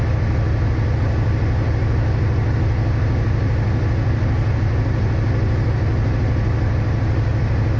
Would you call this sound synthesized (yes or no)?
no